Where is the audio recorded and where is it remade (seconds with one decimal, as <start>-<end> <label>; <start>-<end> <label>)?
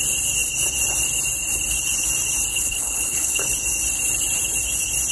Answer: 0.0-2.5 recorded; 2.5-3.4 remade; 3.4-5.1 recorded